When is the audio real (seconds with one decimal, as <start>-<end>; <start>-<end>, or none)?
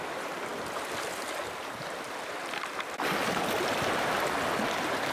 0.0-5.1